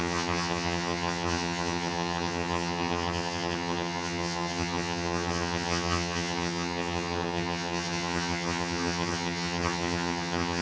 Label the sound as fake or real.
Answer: fake